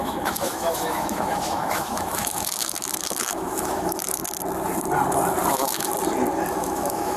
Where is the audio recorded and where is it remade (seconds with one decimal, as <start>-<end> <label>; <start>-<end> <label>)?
0.0-4.2 remade; 4.2-5.5 recorded; 5.5-5.9 remade; 5.9-6.5 recorded; 6.5-7.2 remade